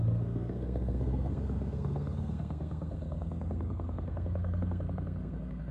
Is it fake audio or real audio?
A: fake